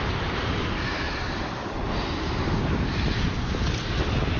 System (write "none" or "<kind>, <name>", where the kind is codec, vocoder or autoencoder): none